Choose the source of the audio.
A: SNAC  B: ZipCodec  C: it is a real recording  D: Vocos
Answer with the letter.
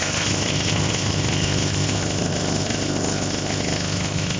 B